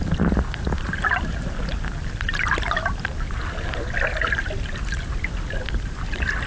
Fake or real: real